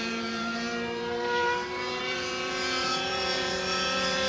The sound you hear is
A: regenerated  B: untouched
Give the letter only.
A